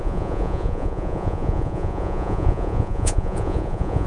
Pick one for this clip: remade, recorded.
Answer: remade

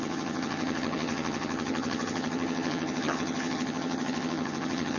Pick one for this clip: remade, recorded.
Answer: remade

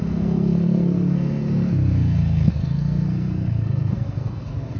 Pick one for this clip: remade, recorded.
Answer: remade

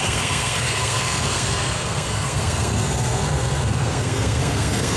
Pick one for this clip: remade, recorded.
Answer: remade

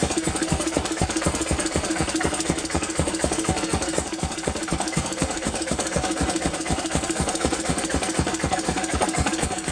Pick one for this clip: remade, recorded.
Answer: remade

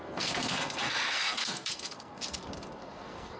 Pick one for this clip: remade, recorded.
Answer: remade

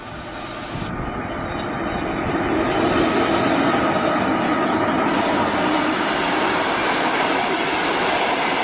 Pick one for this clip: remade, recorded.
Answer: recorded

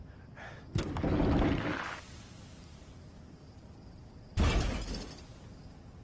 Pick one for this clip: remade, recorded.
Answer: recorded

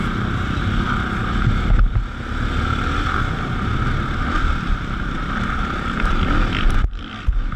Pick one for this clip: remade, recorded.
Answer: recorded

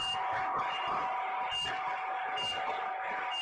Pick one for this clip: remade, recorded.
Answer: recorded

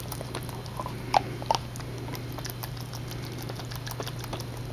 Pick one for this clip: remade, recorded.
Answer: recorded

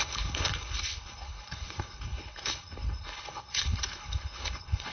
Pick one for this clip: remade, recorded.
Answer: remade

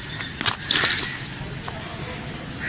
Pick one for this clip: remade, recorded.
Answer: recorded